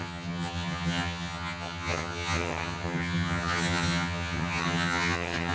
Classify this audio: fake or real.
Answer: fake